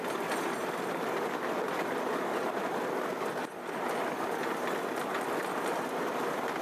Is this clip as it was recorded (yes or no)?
yes